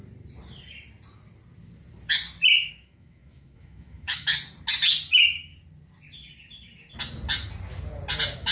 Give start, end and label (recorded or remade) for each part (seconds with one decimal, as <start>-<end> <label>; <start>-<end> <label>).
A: 0.0-2.7 recorded; 2.7-4.3 remade; 4.3-5.1 recorded; 5.1-5.5 remade; 5.5-8.5 recorded